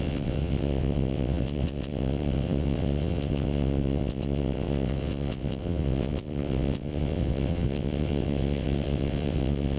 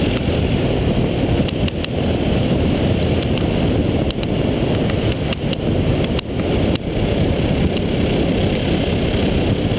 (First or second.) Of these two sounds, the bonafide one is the second